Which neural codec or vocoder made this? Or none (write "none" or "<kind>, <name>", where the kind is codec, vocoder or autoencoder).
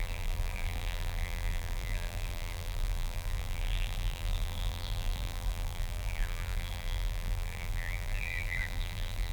vocoder, BigVGAN v2